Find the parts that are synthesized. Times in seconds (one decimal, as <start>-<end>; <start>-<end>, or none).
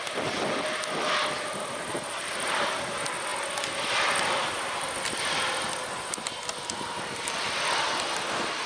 none